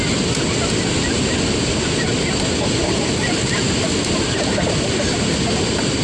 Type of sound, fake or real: real